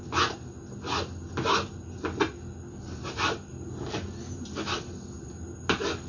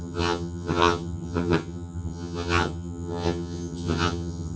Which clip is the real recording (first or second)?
first